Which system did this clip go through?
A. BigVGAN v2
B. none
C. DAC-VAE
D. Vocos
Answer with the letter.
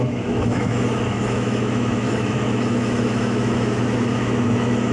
C